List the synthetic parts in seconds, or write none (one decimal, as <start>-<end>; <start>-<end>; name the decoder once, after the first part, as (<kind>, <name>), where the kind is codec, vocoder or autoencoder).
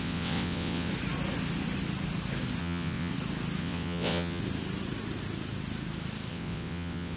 0.0-0.9 (vocoder, WaveNeXt); 2.6-3.1; 3.6-4.4; 6.3-7.2